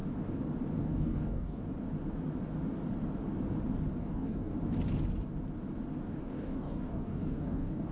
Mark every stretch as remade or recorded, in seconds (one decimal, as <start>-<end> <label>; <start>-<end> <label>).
0.0-0.8 recorded; 0.8-1.6 remade; 1.6-4.0 recorded; 4.0-4.5 remade; 4.5-6.2 recorded; 6.2-7.9 remade